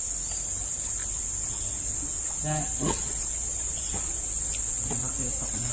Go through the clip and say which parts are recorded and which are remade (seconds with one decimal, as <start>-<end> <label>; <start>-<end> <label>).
0.0-3.5 recorded; 3.5-4.3 remade; 4.3-5.7 recorded